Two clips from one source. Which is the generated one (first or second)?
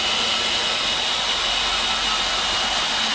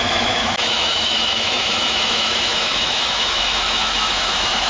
second